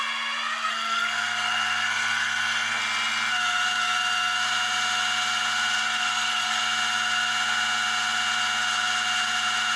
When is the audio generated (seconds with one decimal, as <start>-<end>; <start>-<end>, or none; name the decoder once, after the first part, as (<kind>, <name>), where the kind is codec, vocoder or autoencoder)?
0.7-2.8 (codec, SNAC); 5.8-6.6